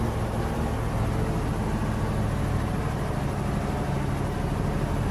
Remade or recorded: recorded